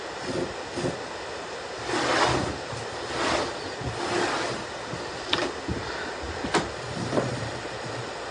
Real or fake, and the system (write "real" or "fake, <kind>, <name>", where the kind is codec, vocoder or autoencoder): real